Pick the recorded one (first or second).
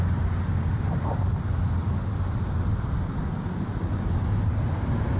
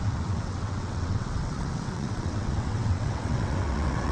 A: first